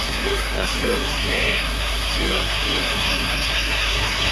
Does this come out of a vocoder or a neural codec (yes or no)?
yes